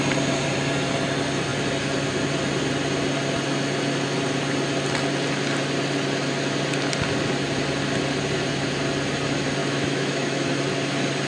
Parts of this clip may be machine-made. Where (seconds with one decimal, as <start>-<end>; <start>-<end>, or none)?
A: 9.6-10.6

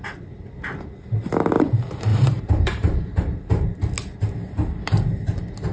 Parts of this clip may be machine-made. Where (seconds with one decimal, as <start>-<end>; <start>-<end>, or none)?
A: 2.1-3.8

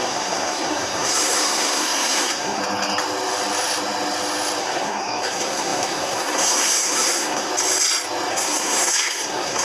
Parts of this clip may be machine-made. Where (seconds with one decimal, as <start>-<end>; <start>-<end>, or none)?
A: 0.0-2.6; 4.6-7.5; 8.3-9.6

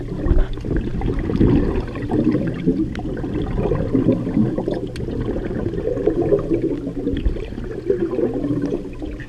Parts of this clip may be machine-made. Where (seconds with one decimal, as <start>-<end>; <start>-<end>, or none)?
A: none

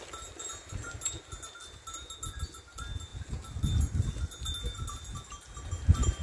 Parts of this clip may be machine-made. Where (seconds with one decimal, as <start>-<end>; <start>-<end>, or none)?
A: none

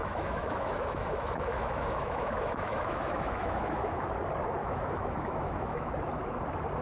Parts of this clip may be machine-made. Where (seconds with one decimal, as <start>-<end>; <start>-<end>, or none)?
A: 0.0-4.1; 4.6-5.9